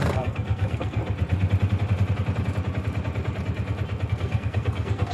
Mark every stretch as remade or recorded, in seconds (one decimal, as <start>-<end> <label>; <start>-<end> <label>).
0.0-1.0 remade; 1.0-4.1 recorded; 4.1-5.1 remade